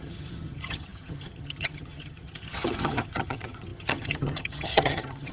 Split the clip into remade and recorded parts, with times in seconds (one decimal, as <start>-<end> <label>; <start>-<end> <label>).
0.0-5.3 remade